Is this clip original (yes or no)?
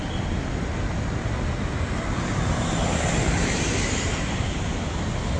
no